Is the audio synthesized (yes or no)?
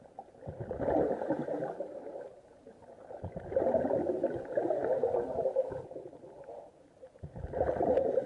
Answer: no